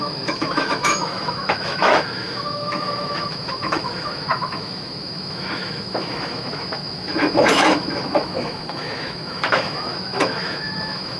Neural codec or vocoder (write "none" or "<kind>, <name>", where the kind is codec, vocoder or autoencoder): autoencoder, DAC-VAE